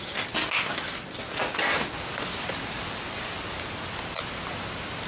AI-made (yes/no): no